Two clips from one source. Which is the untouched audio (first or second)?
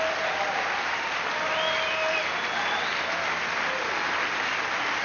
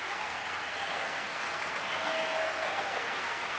first